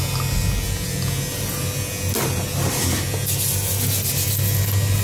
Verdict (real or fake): real